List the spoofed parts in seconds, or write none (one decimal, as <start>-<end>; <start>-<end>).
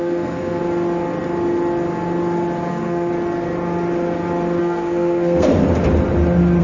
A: 0.0-0.6; 2.7-3.1; 4.6-5.5